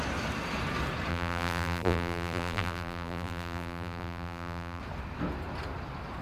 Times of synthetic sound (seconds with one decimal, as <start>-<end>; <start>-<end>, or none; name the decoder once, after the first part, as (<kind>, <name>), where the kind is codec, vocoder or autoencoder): 1.1-4.8 (vocoder, BigVGAN v2)